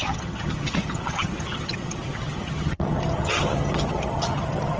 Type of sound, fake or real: fake